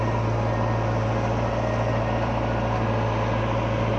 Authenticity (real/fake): real